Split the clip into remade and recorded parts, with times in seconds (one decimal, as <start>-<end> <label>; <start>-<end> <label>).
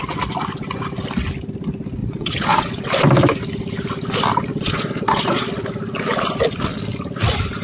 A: 0.0-2.0 recorded; 2.0-2.8 remade; 2.8-4.5 recorded; 4.5-5.5 remade; 5.5-7.6 recorded